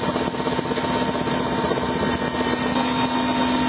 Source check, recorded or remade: recorded